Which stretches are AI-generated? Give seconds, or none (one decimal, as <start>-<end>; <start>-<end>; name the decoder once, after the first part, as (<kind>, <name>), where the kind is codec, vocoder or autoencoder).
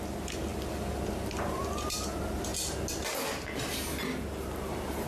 0.0-2.5 (vocoder, BigVGAN v2); 4.4-5.1